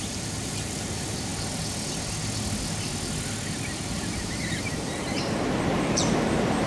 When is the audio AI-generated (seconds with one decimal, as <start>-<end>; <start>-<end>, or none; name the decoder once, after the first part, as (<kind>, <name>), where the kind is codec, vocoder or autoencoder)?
0.0-1.3 (vocoder, BigVGAN v2); 4.1-6.7